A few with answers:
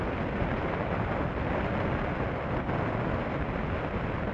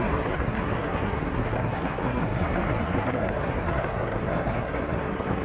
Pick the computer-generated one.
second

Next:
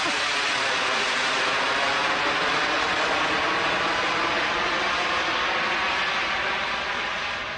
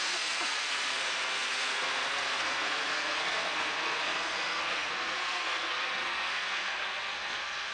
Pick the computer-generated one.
second